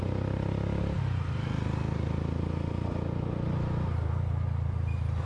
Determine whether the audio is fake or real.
real